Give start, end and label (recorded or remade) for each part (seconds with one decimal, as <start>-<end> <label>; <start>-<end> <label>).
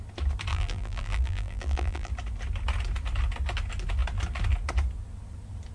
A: 0.0-0.5 recorded; 0.5-2.1 remade; 2.1-5.7 recorded